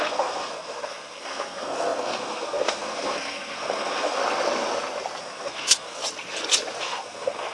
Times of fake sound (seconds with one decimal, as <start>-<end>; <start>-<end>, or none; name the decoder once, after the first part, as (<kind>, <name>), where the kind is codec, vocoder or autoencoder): 0.0-4.2 (codec, SNAC); 5.2-6.0; 6.8-7.5

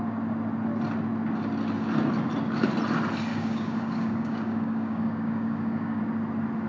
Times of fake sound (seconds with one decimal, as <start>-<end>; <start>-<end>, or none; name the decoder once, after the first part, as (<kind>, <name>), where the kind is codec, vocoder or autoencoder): 3.3-6.0 (codec, DAC)

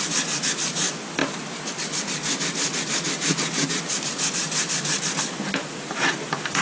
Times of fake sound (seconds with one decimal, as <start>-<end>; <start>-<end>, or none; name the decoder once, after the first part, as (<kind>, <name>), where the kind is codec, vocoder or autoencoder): none

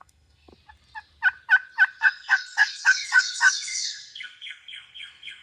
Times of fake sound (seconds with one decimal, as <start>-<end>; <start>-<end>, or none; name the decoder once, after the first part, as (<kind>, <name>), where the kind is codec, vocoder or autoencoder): 0.0-0.5 (codec, SNAC); 2.0-5.4